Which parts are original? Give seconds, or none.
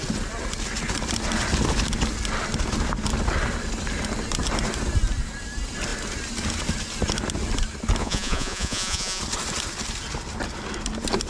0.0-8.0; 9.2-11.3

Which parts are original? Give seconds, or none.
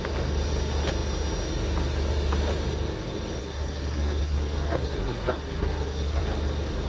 0.0-3.4; 6.2-6.9